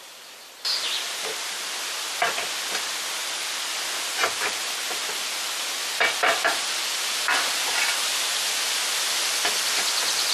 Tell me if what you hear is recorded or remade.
recorded